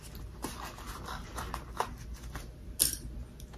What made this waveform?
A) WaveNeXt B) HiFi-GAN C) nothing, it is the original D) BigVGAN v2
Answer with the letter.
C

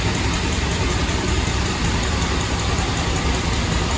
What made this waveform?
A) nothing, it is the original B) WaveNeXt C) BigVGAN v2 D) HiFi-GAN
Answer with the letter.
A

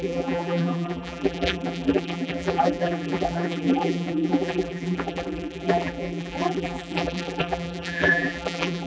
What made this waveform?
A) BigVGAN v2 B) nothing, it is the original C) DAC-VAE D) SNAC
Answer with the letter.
A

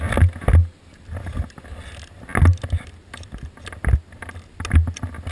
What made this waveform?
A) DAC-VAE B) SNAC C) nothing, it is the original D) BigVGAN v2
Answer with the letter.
C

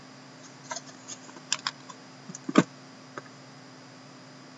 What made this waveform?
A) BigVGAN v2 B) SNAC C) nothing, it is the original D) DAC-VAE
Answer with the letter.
C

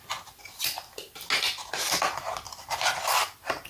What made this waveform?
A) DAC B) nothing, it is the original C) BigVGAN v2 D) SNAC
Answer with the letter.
B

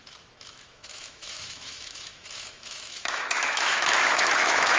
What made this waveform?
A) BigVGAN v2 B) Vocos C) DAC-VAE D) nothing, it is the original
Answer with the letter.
C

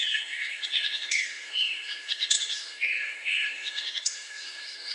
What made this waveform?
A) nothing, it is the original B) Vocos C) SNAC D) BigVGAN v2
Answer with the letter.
C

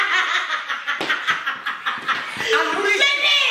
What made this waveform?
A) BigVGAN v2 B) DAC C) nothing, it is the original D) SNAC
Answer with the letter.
C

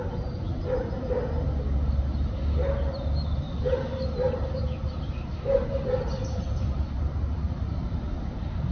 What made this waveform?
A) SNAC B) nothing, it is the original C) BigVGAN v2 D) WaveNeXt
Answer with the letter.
B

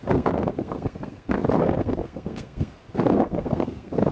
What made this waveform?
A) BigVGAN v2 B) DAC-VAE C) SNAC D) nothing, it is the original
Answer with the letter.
C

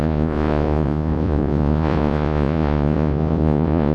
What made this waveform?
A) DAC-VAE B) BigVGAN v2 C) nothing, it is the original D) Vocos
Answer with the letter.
D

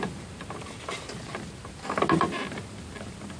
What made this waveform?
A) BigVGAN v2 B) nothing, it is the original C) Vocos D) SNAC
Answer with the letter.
B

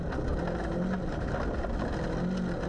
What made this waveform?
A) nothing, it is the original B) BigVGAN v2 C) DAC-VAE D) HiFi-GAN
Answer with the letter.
A